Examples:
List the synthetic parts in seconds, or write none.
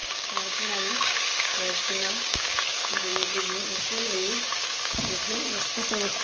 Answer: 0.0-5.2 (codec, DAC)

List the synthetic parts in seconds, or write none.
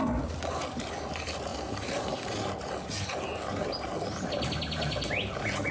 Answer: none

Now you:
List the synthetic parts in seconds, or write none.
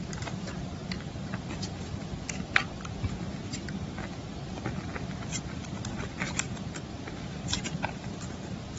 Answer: 0.0-0.8 (vocoder, BigVGAN v2); 4.2-8.8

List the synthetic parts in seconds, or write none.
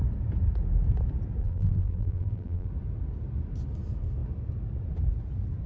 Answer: 1.4-2.7 (vocoder, BigVGAN v2)